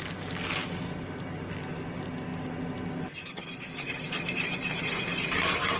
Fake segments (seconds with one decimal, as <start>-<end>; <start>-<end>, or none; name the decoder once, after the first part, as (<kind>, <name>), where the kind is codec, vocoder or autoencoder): none